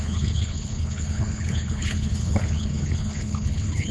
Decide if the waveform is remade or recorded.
remade